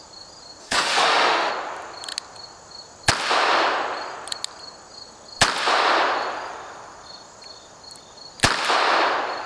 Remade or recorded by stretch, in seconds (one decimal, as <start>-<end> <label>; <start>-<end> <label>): 0.0-0.6 recorded; 0.6-1.5 remade; 1.5-9.5 recorded